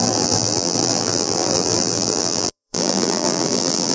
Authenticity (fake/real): fake